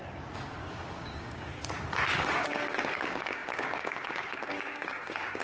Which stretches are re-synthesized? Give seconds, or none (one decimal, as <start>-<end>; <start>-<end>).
0.6-1.6; 2.2-5.4